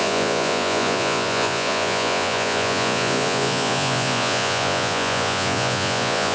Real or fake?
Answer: fake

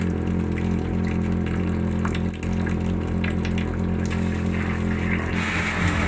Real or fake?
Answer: real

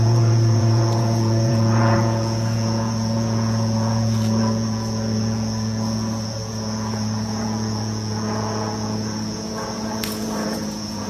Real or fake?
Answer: fake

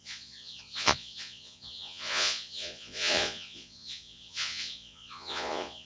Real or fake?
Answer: fake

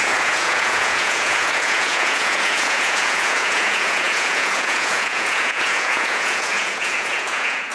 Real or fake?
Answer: fake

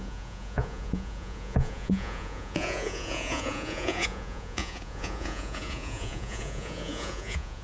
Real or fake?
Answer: fake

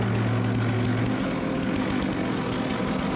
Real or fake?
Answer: real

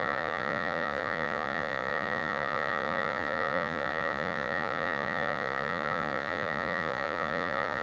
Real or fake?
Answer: fake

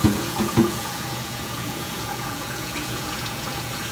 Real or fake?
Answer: fake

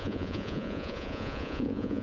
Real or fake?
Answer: fake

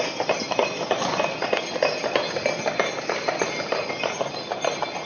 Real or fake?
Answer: real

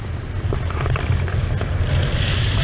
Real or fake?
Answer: real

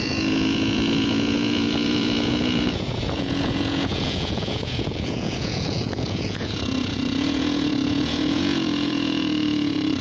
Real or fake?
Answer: fake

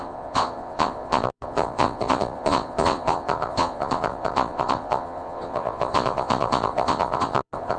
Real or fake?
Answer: fake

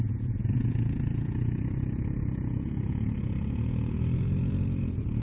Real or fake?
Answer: fake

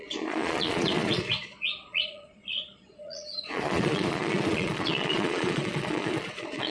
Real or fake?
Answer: fake